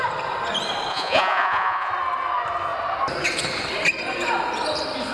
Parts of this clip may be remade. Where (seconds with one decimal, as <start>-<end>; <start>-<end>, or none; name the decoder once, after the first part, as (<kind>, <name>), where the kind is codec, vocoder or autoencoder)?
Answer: 0.9-1.9 (vocoder, Vocos)